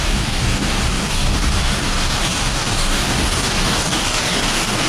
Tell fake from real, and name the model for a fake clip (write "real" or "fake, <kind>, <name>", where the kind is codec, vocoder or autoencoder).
fake, codec, DAC